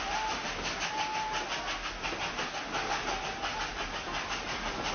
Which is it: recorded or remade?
recorded